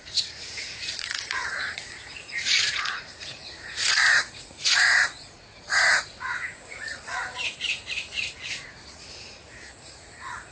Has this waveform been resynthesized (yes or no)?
yes